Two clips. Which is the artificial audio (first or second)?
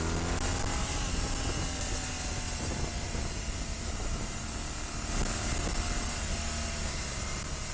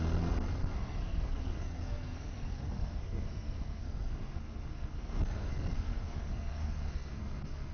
second